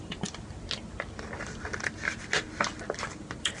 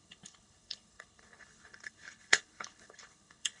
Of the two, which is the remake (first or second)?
second